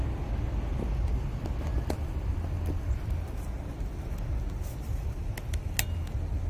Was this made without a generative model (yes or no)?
yes